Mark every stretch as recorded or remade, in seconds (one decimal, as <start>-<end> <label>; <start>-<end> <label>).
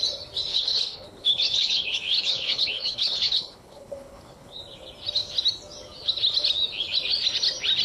0.0-0.5 recorded; 0.5-4.6 remade; 4.6-7.8 recorded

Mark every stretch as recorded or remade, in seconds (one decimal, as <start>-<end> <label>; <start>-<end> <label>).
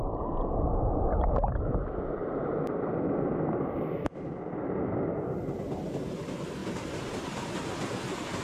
0.0-8.4 recorded